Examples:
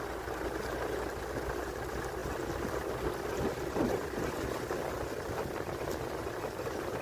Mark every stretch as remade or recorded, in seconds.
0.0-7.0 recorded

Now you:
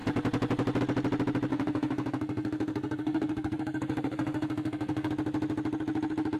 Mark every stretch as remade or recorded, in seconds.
0.0-1.5 recorded; 1.5-5.1 remade; 5.1-6.4 recorded